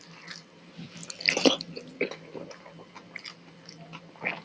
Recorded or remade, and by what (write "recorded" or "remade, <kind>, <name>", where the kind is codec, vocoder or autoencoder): recorded